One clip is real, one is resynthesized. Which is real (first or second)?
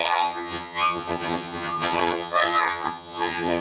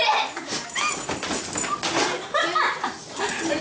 second